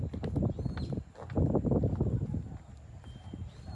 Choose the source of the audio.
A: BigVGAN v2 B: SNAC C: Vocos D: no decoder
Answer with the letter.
D